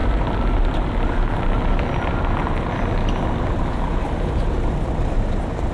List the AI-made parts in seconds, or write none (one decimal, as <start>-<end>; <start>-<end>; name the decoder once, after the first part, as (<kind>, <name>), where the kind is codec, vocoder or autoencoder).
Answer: none